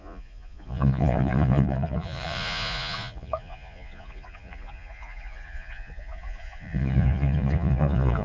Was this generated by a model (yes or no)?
yes